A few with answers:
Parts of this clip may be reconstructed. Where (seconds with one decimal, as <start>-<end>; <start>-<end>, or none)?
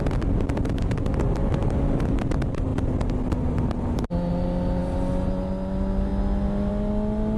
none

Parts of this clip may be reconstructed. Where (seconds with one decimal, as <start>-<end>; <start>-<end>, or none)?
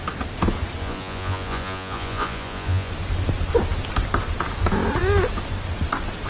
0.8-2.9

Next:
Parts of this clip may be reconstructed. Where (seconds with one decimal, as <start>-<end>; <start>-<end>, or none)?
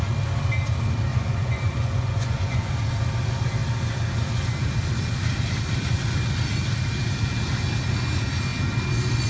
1.1-2.7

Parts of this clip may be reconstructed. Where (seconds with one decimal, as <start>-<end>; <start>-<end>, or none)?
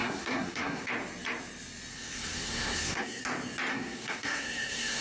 0.0-0.9; 1.9-3.2; 3.7-5.0